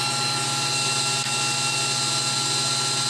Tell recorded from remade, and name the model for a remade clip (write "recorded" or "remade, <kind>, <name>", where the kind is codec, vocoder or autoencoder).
recorded